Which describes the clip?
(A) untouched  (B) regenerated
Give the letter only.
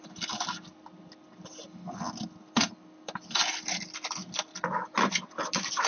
A